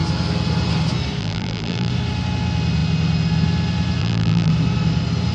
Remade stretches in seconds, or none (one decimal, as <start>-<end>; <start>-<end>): 1.2-1.9; 4.0-4.5